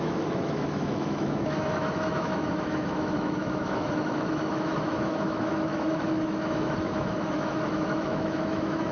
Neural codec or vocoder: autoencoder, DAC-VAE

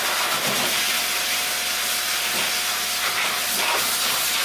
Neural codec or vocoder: none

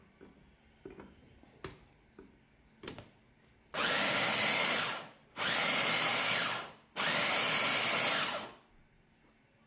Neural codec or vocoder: none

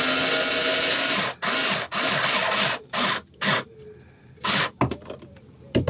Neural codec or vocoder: none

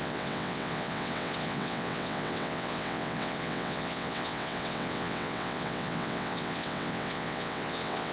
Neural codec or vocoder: vocoder, WaveNeXt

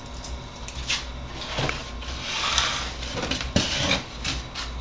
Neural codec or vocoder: none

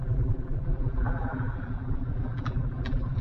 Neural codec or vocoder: vocoder, BigVGAN v2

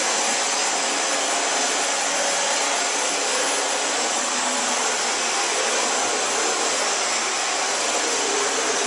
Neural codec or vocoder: none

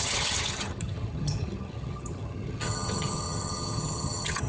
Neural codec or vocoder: vocoder, HiFi-GAN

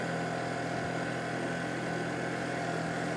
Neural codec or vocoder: none